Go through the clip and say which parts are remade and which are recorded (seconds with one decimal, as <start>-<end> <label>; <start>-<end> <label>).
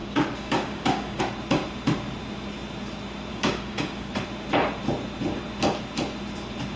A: 0.0-1.2 remade; 1.2-3.3 recorded; 3.3-4.1 remade; 4.1-6.8 recorded